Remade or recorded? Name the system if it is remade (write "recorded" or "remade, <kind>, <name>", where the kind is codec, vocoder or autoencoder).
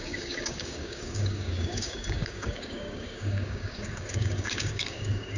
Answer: remade, codec, DAC